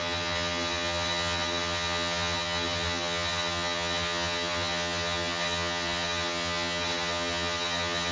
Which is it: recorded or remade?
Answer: remade